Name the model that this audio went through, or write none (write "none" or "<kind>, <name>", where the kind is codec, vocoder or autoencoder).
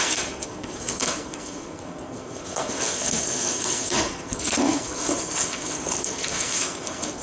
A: codec, SNAC